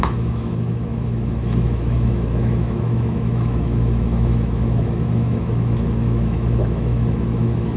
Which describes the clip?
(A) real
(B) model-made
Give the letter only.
B